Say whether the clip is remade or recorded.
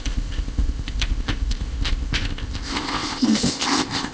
remade